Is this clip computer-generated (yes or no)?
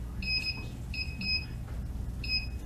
no